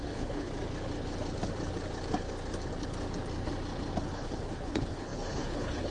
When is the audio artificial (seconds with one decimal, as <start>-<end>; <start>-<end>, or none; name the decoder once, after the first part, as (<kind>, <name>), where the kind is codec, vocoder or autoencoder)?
0.0-0.5 (codec, HILCodec); 4.0-5.9